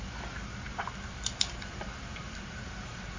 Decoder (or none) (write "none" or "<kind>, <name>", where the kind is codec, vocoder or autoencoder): none